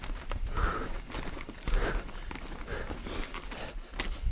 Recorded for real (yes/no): yes